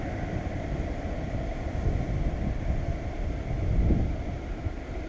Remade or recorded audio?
remade